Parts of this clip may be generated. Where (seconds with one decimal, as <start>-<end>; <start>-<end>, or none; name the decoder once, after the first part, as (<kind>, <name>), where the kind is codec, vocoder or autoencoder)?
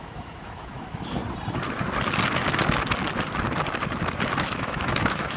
0.0-1.2 (autoencoder, DAC-VAE); 4.4-5.4